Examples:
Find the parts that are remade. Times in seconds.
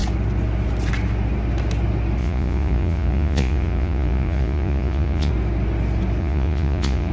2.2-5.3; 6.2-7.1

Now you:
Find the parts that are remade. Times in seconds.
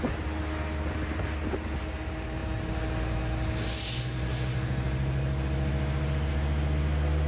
none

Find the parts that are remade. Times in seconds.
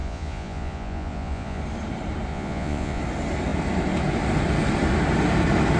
0.0-1.6; 2.3-3.0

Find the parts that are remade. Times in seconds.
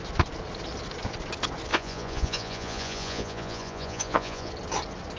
1.7-4.5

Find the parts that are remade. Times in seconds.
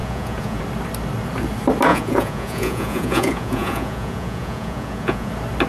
0.0-0.6; 1.9-5.3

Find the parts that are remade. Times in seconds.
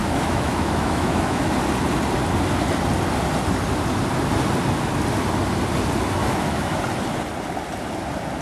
0.0-1.5; 6.2-6.8